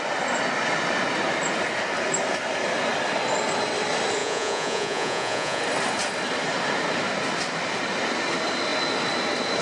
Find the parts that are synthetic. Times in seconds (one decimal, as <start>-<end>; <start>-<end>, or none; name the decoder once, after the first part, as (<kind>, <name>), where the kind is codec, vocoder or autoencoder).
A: 4.2-5.6 (vocoder, Vocos)